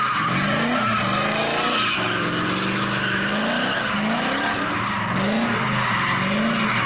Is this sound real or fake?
real